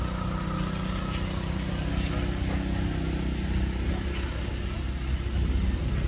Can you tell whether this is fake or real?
real